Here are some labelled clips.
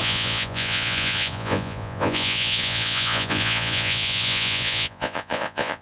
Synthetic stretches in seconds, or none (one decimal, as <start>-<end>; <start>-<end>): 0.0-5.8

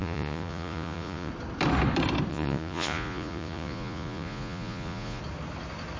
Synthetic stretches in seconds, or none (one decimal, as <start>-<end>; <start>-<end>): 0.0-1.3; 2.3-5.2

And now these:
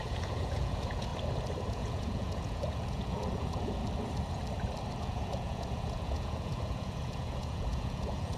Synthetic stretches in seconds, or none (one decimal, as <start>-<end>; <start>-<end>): 0.0-1.1; 1.7-3.8; 5.0-8.4

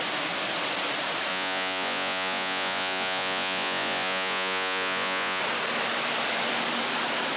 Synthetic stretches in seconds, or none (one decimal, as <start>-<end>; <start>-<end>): 1.3-5.4

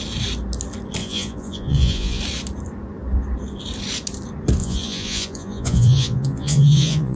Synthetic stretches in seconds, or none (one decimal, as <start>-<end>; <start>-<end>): 1.0-2.2; 4.6-7.2